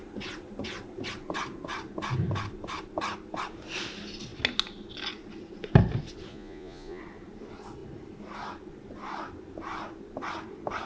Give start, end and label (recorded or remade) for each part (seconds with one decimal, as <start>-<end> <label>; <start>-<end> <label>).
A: 0.0-6.3 recorded; 6.3-7.0 remade; 7.0-10.9 recorded